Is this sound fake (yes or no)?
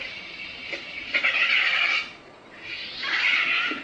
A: no